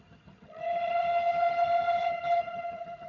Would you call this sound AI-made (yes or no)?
yes